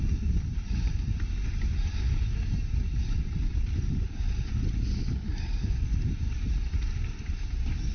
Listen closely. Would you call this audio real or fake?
real